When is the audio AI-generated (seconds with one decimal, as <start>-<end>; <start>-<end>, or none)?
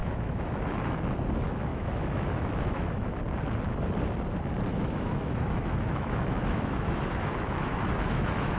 0.0-1.0; 1.7-3.2; 4.7-8.6